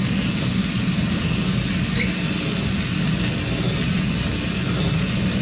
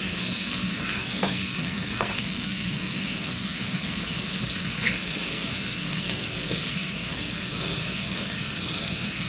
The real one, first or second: first